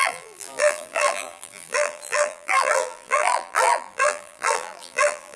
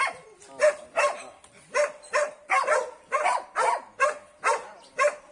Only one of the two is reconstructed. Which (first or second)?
first